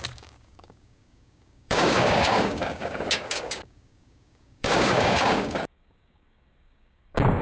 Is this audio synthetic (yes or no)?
yes